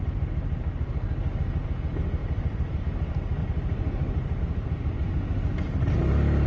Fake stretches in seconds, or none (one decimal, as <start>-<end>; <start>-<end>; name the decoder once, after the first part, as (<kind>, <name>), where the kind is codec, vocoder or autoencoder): 2.2-2.8 (vocoder, BigVGAN v2); 3.4-4.4